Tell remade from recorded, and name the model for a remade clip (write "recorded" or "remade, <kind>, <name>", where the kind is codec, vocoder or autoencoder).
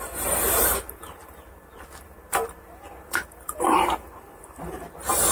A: recorded